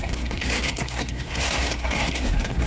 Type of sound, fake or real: fake